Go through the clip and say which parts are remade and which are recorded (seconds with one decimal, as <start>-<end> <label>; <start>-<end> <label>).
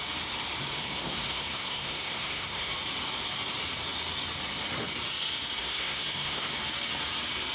0.0-0.8 recorded; 0.8-2.7 remade; 2.7-5.6 recorded; 5.6-6.5 remade; 6.5-7.5 recorded